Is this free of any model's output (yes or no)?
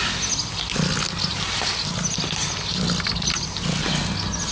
yes